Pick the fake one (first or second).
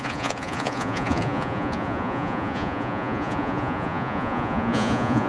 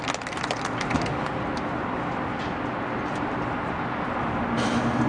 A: first